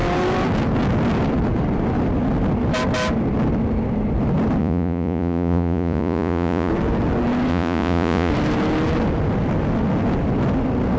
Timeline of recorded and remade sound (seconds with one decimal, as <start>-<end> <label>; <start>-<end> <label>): 0.0-4.6 recorded; 4.6-6.7 remade; 6.7-7.5 recorded; 7.5-8.3 remade; 8.3-11.0 recorded